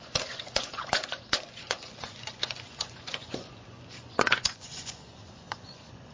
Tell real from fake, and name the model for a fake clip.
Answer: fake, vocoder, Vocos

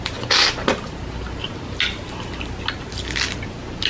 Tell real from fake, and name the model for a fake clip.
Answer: real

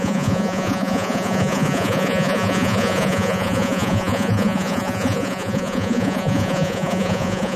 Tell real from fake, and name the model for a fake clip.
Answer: fake, vocoder, Vocos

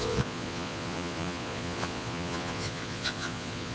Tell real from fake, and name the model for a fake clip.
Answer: fake, vocoder, Vocos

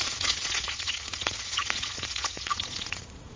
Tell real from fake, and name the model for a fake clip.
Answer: fake, vocoder, Vocos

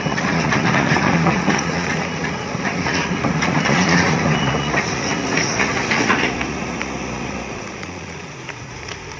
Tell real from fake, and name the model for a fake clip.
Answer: fake, vocoder, Vocos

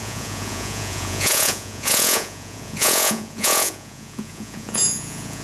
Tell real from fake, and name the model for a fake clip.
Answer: fake, vocoder, Vocos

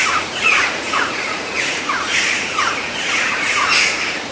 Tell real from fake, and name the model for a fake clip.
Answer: fake, vocoder, Vocos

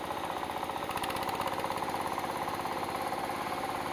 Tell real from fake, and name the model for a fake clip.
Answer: real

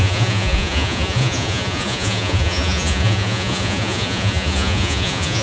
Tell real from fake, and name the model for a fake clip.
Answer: fake, vocoder, Vocos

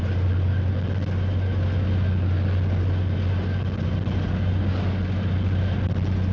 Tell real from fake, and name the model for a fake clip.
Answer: real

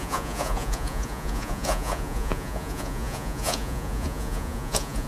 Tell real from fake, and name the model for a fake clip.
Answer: fake, vocoder, Vocos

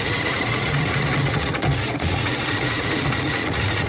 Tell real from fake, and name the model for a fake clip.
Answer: fake, vocoder, Vocos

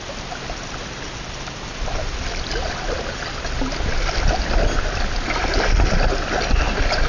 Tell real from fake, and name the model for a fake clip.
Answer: real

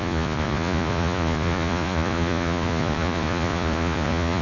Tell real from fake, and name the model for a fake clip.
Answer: fake, vocoder, Vocos